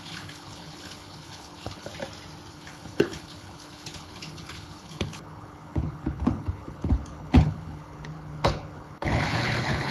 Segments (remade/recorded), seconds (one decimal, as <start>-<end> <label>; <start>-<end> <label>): 0.0-1.9 remade; 1.9-2.5 recorded; 2.5-9.9 remade